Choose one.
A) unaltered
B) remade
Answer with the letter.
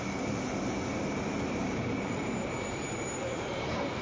B